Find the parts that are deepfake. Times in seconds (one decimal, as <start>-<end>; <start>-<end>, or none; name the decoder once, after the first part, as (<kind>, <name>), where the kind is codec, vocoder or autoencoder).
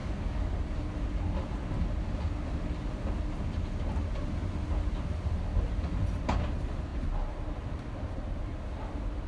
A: 0.0-0.6 (codec, DAC)